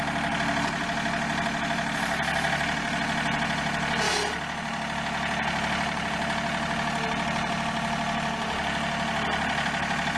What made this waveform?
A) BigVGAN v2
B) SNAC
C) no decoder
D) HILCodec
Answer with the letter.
C